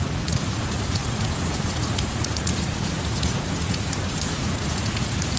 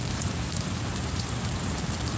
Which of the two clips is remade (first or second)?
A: first